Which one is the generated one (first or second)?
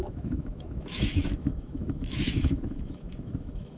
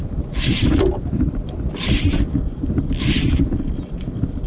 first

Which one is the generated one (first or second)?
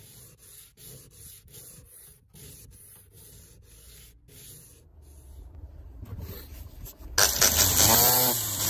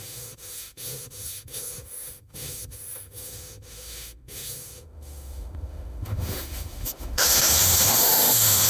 second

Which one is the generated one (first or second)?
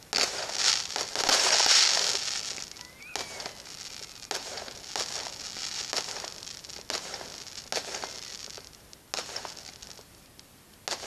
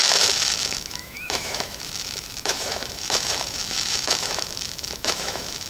second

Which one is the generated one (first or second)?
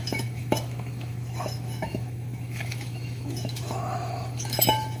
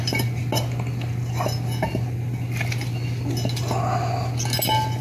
first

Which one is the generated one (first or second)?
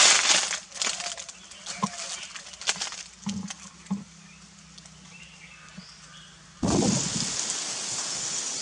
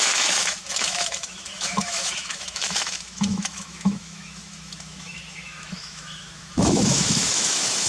second